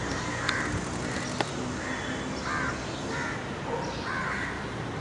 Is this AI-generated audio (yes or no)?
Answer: no